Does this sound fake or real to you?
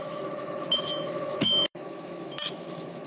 fake